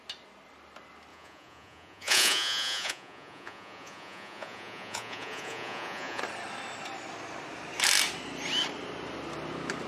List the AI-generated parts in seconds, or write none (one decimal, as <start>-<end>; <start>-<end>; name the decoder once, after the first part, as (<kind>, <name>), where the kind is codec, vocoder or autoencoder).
1.1-6.2 (vocoder, Vocos)